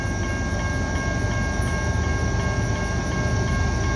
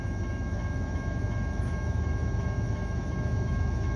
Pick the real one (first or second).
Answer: first